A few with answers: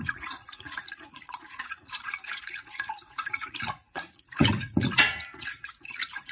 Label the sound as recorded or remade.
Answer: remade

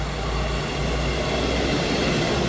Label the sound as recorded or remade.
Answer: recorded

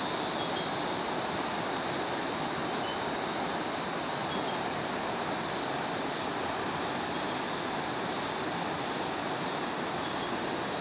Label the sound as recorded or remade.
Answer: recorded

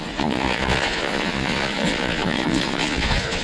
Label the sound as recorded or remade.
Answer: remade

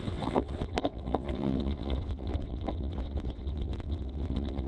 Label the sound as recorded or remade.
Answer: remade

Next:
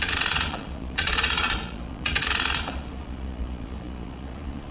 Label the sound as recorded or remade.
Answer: remade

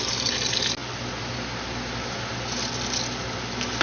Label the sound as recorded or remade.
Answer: recorded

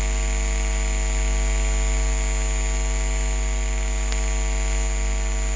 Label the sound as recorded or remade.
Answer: recorded